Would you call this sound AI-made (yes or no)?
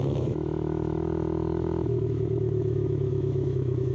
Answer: yes